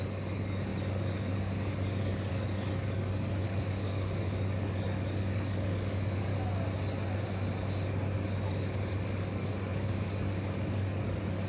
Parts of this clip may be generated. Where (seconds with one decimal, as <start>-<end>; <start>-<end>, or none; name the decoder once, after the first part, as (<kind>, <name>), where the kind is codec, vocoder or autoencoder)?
0.0-6.3 (codec, DAC); 8.5-11.5